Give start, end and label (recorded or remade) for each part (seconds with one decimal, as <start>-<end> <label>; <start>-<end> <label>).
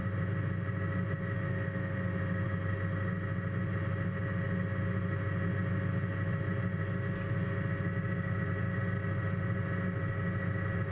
0.0-10.9 recorded